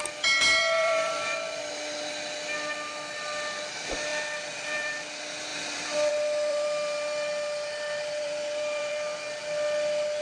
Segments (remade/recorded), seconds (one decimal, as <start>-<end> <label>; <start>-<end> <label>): 0.0-0.6 recorded; 0.6-1.6 remade; 1.6-4.1 recorded; 4.1-4.9 remade; 4.9-6.5 recorded; 6.5-8.9 remade; 8.9-10.2 recorded